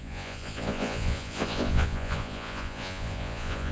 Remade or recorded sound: remade